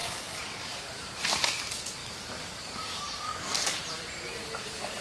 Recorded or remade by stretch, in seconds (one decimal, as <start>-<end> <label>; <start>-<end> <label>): 0.0-0.9 remade; 0.9-2.0 recorded; 2.0-3.8 remade; 3.8-5.0 recorded